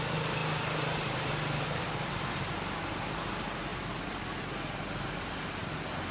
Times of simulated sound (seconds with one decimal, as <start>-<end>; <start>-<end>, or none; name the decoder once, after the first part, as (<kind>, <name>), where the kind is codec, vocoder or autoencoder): none